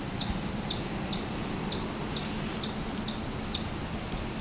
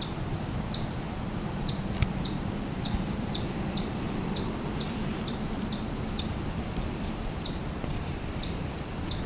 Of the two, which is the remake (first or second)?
second